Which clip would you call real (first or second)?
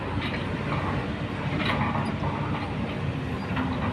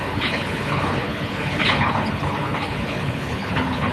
first